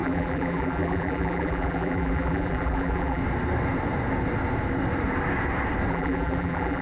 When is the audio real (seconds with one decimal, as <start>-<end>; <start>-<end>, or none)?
3.2-5.9